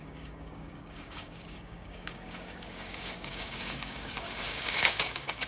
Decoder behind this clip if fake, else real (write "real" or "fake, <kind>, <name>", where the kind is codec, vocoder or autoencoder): fake, codec, DAC